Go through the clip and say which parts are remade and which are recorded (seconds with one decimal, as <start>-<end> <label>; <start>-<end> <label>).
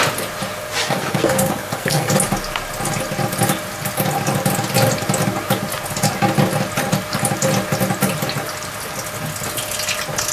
0.0-0.8 recorded; 0.8-2.1 remade; 2.1-10.3 recorded